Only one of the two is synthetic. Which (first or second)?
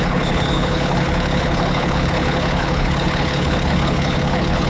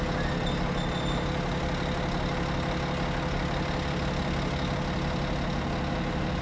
first